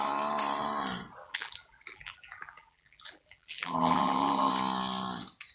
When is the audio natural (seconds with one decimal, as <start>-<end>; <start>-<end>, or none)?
0.0-1.2; 4.5-5.5